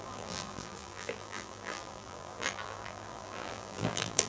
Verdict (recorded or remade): remade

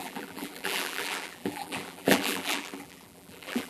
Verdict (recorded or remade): remade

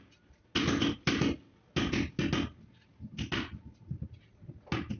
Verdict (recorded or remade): recorded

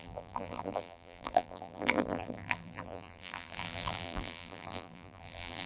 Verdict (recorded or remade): remade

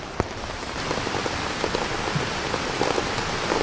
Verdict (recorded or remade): recorded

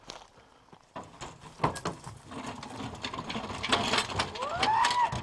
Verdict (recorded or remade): recorded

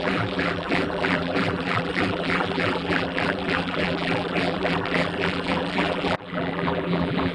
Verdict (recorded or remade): remade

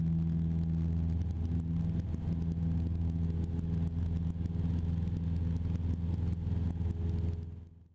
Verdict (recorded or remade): recorded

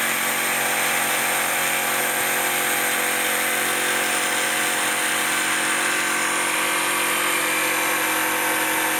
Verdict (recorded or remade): recorded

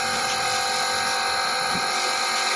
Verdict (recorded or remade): recorded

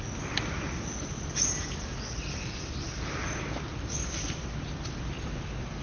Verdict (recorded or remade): recorded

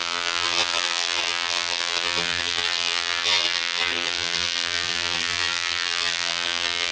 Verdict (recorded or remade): remade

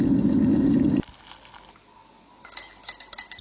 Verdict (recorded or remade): recorded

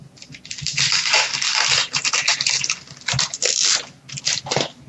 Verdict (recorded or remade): recorded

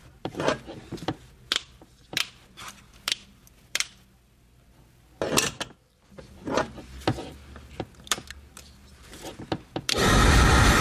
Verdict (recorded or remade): remade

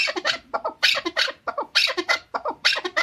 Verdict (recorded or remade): remade